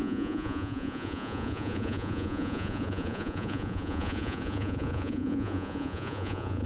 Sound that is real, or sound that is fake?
fake